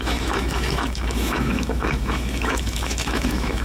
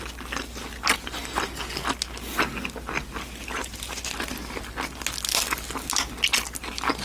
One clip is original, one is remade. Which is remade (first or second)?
first